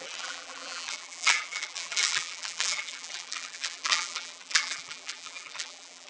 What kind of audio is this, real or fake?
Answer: fake